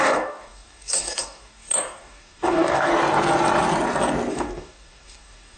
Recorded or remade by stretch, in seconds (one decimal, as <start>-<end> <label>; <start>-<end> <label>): 0.0-2.9 remade; 2.9-4.3 recorded; 4.3-5.6 remade